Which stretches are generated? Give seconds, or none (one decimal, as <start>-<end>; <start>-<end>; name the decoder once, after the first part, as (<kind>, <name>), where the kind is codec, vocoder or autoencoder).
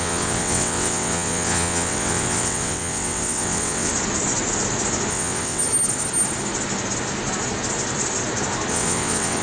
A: 0.0-3.9 (vocoder, WaveNeXt); 5.1-5.6; 8.7-9.4